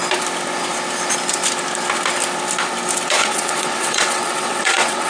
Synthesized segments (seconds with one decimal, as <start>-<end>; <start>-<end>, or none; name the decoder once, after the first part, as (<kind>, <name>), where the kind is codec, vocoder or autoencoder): 3.2-5.1 (vocoder, WaveNeXt)